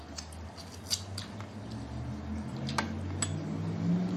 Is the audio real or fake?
real